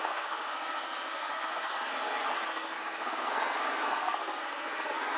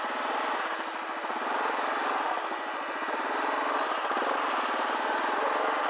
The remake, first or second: first